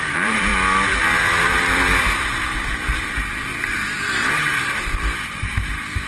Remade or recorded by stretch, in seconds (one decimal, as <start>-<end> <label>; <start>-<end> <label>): 0.0-0.5 remade; 0.5-1.4 recorded; 1.4-1.9 remade; 1.9-2.8 recorded; 2.8-6.1 remade